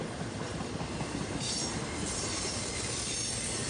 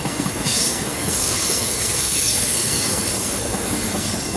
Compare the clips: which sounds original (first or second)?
first